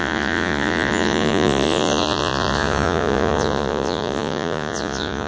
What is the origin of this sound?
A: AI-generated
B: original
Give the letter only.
A